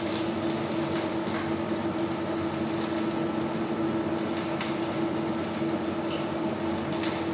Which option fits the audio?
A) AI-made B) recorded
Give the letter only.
B